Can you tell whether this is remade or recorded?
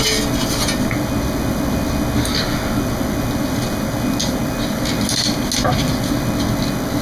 recorded